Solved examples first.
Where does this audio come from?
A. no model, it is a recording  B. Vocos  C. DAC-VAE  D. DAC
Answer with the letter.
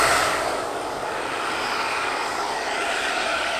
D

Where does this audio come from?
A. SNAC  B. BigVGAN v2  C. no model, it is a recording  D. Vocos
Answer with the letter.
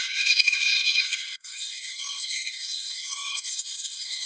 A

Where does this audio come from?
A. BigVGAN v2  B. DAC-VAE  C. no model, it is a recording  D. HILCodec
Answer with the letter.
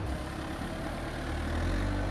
C